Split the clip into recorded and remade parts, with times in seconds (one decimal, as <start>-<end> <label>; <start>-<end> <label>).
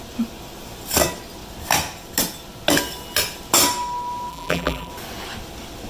0.0-4.3 recorded; 4.3-4.9 remade; 4.9-5.9 recorded